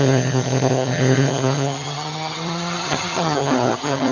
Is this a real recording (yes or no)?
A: no